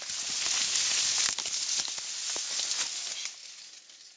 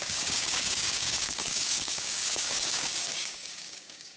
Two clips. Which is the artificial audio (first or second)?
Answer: second